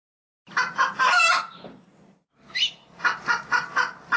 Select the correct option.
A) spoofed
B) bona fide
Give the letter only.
B